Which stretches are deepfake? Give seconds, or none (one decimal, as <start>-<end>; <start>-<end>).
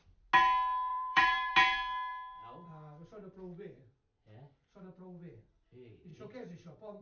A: 0.9-1.5; 6.1-7.0